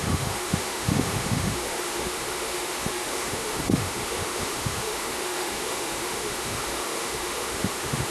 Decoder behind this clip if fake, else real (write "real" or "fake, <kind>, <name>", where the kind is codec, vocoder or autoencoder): fake, autoencoder, DAC-VAE